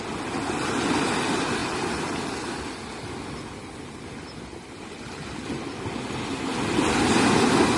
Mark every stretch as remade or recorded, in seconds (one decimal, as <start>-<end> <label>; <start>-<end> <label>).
0.0-7.8 recorded